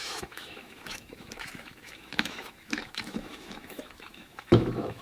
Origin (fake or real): fake